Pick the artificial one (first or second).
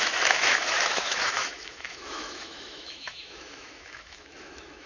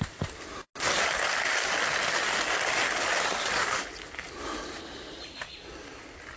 first